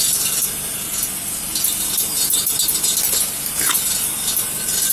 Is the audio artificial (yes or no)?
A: no